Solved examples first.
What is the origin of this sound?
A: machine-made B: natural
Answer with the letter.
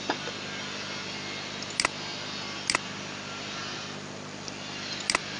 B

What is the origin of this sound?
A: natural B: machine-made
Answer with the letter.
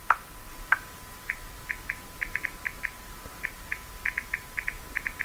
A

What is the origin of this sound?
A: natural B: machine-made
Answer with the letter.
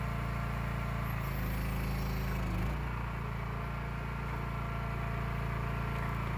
A